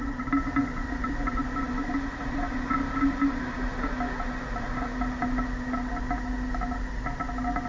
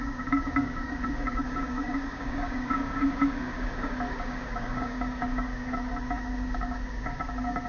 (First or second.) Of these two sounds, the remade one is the second